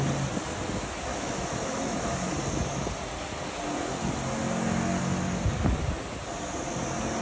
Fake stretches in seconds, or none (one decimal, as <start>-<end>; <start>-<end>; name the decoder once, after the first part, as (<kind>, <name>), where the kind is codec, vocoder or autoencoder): 1.1-2.1 (autoencoder, DAC-VAE)